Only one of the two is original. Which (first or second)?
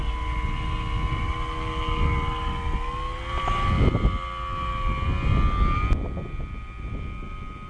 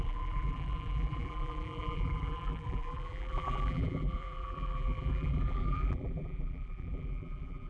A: first